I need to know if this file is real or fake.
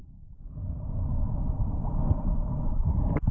fake